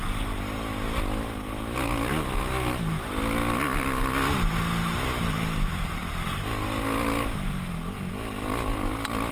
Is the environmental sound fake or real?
real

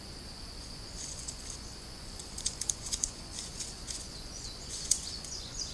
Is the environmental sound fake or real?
fake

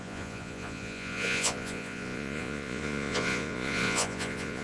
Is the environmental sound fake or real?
fake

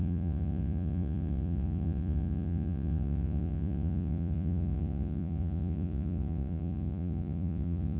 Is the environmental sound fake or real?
fake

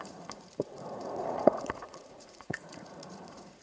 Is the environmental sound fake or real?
fake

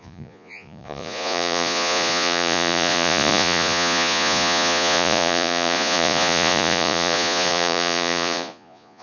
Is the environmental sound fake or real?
fake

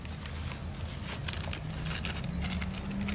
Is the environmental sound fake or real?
real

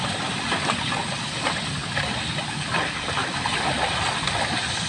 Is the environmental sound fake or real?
real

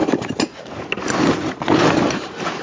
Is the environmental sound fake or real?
real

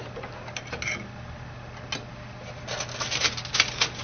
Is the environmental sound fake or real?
real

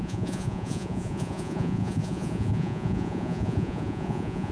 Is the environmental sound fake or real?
fake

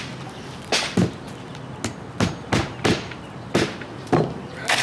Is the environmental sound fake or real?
real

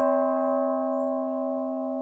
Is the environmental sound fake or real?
real